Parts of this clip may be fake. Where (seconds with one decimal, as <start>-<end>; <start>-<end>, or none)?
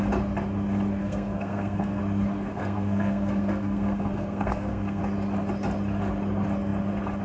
1.0-2.0; 2.5-5.0